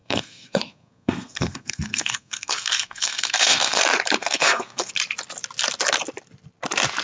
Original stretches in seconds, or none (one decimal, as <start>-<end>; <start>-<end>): 3.8-4.2; 4.9-7.0